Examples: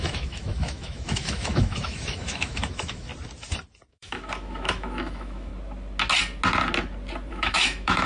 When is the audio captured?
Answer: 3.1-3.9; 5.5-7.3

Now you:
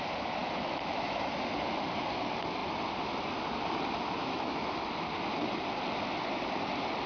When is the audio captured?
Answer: 0.0-0.4; 1.4-4.2; 4.9-7.1

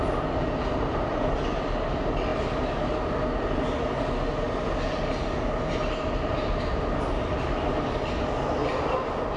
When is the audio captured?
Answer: 0.0-9.4

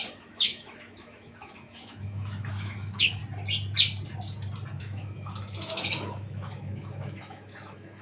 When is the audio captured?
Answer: 3.2-4.8

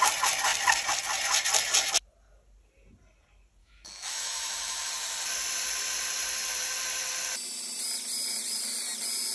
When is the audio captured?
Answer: 0.0-3.6; 4.9-9.3